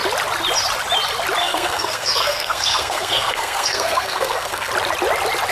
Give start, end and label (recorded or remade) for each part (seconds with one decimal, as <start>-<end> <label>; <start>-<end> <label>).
0.0-1.4 recorded; 1.4-4.7 remade; 4.7-5.5 recorded